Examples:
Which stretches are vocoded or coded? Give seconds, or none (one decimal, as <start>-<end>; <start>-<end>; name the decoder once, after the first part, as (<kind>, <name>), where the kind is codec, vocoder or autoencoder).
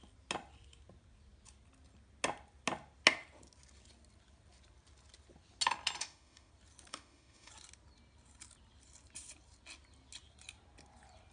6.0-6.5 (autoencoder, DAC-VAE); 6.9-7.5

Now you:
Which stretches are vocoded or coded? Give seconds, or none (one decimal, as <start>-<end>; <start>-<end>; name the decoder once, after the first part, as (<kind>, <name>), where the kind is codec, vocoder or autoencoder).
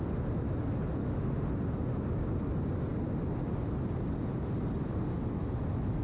1.0-1.5 (autoencoder, DAC-VAE)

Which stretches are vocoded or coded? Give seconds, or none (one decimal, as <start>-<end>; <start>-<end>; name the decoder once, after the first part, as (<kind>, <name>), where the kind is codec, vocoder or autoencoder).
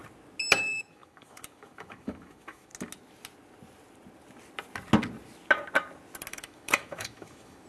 0.6-2.7 (autoencoder, DAC-VAE); 6.3-7.7